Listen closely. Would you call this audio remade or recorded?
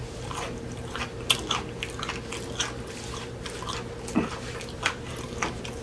recorded